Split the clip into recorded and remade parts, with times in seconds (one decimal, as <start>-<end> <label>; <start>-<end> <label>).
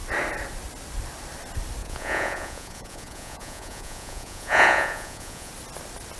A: 0.0-1.8 recorded; 1.8-5.5 remade; 5.5-6.2 recorded